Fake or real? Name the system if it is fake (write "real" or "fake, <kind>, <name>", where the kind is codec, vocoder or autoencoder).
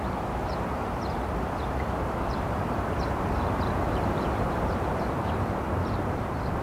fake, vocoder, BigVGAN v2